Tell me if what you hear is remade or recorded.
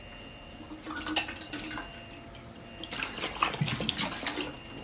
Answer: recorded